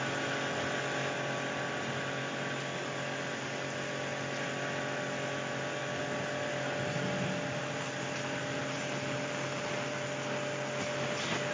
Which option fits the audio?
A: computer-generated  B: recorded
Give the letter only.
B